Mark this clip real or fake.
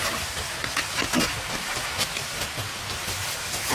real